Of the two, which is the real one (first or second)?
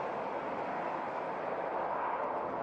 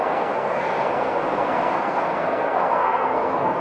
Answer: first